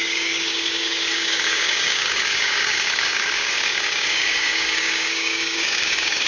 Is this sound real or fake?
fake